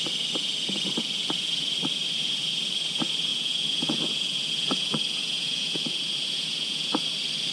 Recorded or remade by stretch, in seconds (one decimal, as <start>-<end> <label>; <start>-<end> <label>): 0.0-3.3 recorded; 3.3-6.9 remade; 6.9-7.5 recorded